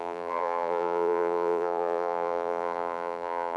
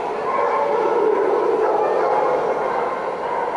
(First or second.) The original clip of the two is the second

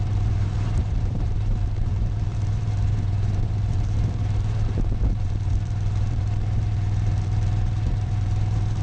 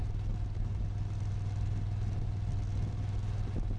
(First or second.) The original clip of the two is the second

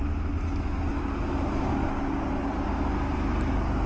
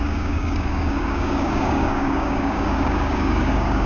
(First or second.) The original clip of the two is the first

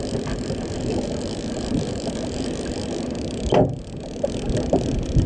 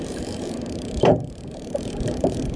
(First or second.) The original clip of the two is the first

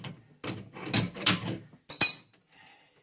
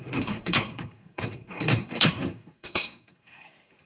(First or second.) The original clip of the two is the first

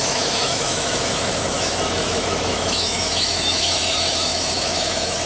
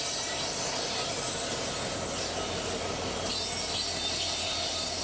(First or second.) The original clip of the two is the second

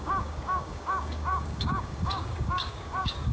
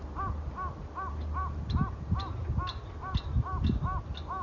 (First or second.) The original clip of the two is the second